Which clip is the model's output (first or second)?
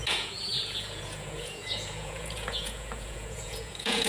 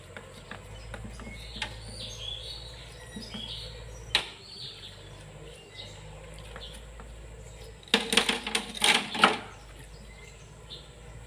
first